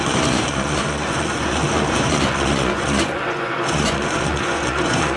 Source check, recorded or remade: remade